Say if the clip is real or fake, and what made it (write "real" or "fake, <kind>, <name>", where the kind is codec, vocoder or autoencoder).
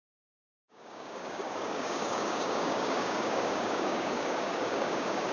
fake, codec, DAC